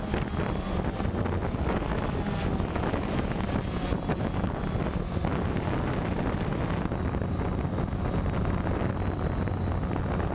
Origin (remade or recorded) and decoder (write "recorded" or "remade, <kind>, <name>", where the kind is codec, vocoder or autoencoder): recorded